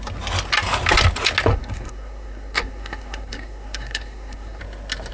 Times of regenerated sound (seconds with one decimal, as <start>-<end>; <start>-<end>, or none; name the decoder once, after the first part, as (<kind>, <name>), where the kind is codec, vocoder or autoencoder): 1.5-4.6 (codec, SNAC)